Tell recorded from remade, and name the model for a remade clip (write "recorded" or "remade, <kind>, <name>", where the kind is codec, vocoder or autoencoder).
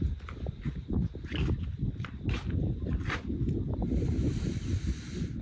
recorded